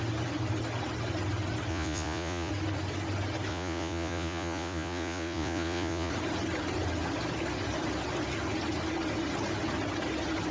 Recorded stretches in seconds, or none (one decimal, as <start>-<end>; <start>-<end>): 0.0-1.7; 2.5-3.5; 6.1-10.5